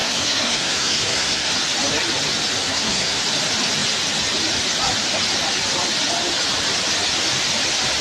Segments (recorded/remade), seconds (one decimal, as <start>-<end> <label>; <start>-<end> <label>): 0.0-1.5 remade; 1.5-2.6 recorded; 2.6-3.2 remade; 3.2-8.0 recorded